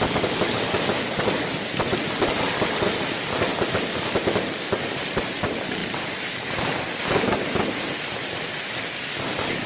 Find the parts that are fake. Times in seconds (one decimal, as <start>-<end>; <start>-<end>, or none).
none